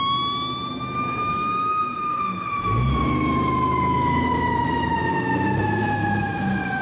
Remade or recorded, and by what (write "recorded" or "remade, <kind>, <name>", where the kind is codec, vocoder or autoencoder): remade, autoencoder, DAC-VAE